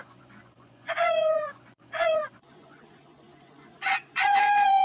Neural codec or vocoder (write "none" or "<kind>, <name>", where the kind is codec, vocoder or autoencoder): vocoder, Vocos